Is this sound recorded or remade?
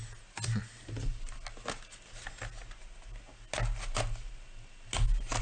recorded